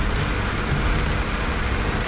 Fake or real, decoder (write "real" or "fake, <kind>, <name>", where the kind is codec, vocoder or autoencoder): real